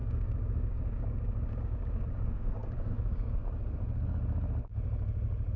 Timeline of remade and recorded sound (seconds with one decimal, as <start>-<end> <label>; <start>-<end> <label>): 0.0-3.4 remade; 3.4-5.6 recorded